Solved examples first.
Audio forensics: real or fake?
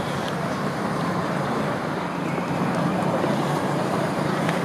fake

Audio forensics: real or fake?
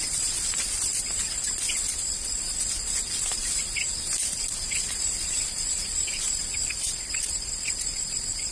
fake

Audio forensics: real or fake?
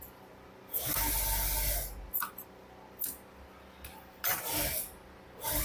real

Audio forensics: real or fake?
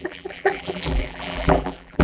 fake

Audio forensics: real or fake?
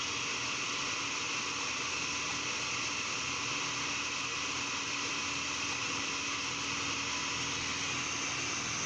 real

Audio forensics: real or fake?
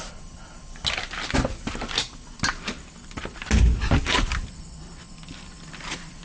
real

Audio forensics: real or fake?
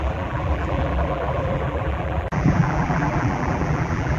fake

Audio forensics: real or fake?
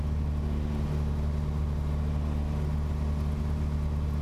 real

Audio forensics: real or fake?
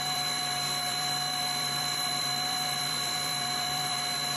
fake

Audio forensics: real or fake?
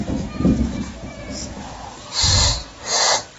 real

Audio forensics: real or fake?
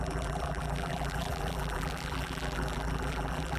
fake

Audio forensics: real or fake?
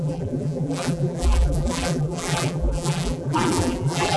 fake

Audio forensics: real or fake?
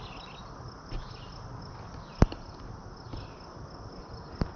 real